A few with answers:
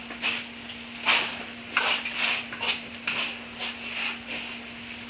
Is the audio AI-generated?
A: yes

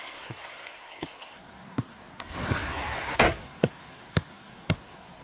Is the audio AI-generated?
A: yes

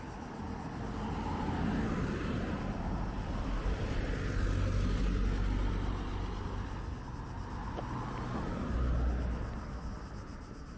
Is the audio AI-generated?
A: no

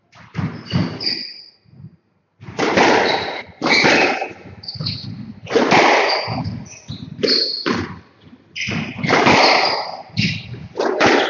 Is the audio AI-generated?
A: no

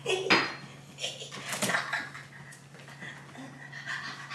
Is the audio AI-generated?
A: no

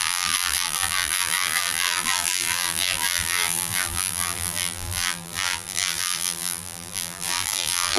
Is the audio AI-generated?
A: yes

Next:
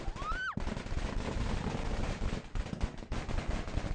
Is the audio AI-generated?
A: no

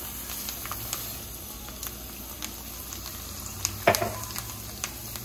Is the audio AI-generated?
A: no